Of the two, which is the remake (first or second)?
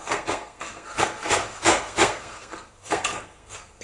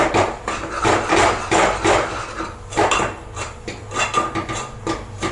first